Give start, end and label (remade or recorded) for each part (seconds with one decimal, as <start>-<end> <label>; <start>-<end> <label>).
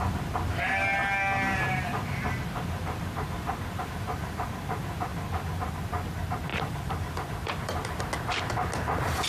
0.0-6.5 recorded; 6.5-8.0 remade; 8.0-9.3 recorded